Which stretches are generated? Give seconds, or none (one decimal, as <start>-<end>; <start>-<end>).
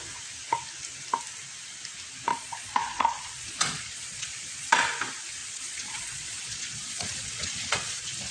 2.3-4.8; 5.4-8.3